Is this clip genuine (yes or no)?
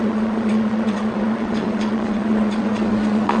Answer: no